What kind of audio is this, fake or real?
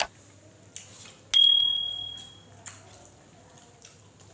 real